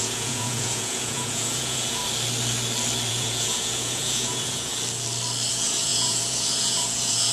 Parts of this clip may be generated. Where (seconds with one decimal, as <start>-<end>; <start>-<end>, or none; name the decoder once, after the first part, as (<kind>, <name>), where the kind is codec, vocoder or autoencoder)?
0.0-2.0 (vocoder, Vocos); 3.1-4.7; 5.5-7.3